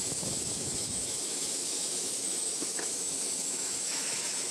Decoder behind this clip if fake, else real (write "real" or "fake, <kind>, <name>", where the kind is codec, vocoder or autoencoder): fake, autoencoder, DAC-VAE